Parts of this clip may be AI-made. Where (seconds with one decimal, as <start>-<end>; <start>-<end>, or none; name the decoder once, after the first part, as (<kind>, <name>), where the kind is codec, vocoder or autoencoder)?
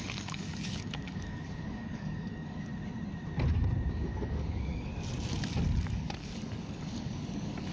0.0-2.7 (codec, DAC); 3.9-4.9; 5.8-7.7